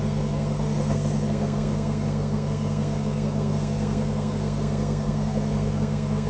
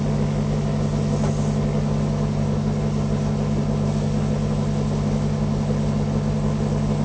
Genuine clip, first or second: second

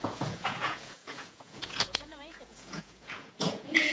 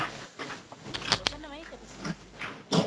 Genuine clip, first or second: second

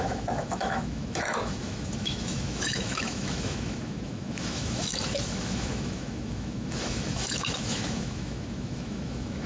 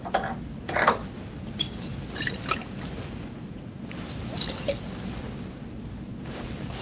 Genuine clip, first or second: second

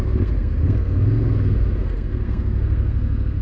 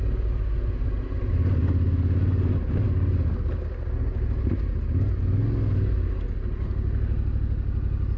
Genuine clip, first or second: second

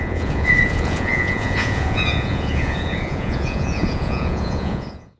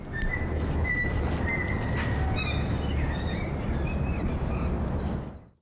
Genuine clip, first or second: second